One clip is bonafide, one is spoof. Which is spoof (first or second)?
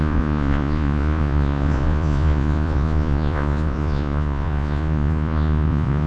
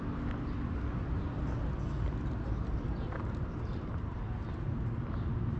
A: first